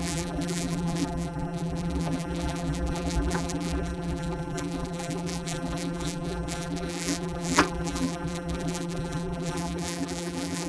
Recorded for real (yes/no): no